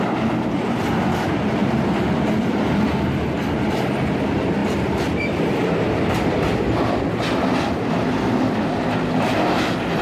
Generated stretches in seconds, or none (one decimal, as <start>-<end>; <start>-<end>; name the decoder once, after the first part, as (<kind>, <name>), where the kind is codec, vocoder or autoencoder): none